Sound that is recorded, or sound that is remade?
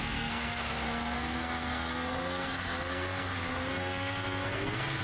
remade